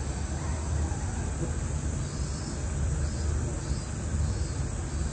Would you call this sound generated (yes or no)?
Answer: no